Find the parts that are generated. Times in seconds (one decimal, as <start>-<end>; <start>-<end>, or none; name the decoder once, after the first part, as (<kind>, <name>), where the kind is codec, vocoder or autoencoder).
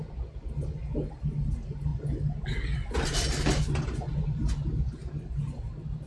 none